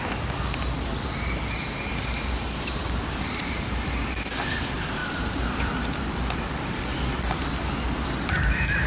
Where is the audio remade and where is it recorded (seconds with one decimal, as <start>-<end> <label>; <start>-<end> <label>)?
0.0-5.0 recorded; 5.0-8.3 remade; 8.3-8.9 recorded